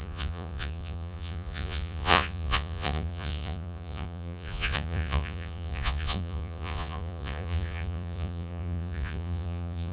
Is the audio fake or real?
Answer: fake